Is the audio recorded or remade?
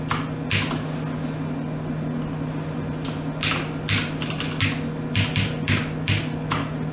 recorded